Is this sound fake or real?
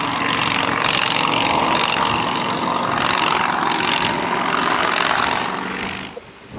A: real